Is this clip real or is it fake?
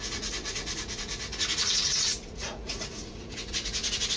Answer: fake